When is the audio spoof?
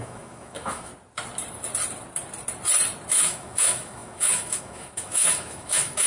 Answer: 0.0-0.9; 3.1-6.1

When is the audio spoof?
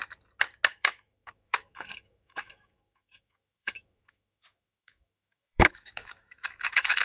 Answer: 0.7-7.0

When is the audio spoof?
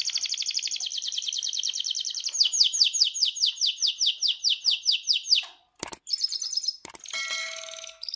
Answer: 7.4-8.2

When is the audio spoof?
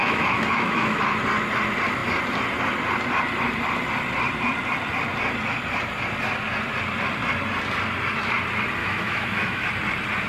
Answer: 0.0-1.0; 8.8-9.7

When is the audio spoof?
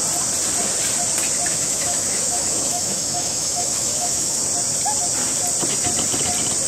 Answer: 1.5-4.4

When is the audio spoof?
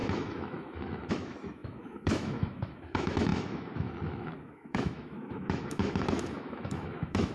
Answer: 0.0-7.3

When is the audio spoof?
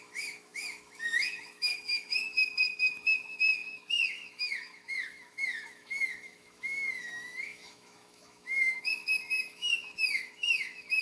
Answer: 0.0-11.0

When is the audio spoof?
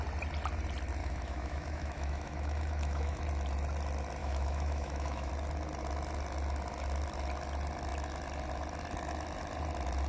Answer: 1.0-3.2; 4.2-5.3